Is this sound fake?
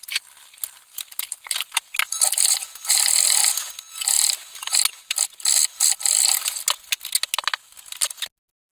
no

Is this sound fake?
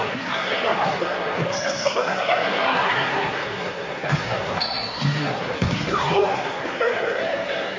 yes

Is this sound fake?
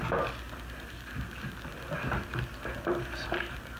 no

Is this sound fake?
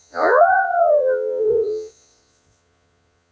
yes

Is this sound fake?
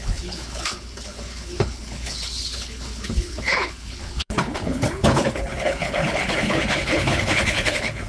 yes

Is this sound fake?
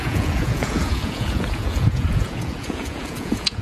yes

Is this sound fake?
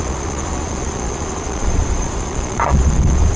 yes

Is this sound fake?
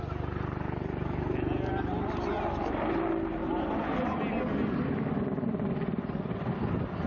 no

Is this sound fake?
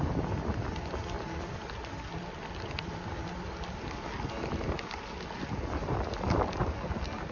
no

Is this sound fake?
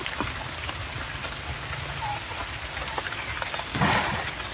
no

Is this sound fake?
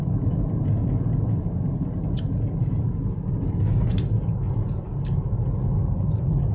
no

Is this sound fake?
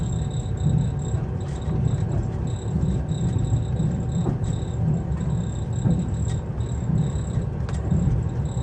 no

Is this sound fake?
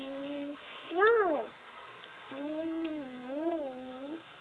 yes